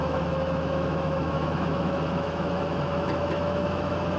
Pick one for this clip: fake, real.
fake